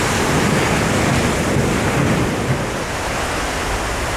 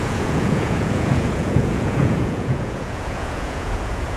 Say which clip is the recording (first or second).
first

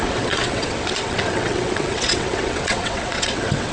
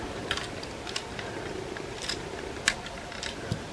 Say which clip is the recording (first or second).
second